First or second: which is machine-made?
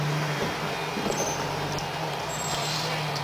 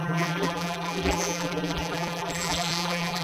second